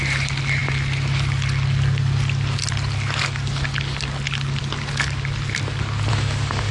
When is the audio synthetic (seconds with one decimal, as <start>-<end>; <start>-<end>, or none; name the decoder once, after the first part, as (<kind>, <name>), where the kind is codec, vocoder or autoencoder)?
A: 6.1-6.7 (autoencoder, DAC-VAE)